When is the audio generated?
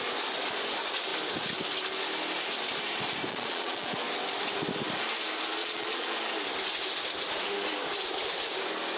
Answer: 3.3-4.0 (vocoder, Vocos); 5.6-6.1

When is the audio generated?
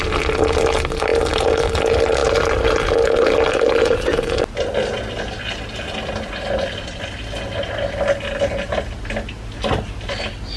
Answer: none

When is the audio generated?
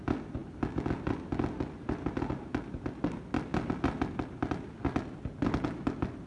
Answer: none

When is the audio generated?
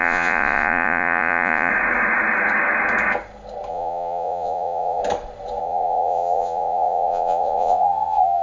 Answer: 0.0-1.7 (vocoder, Vocos); 3.7-5.0; 5.6-8.4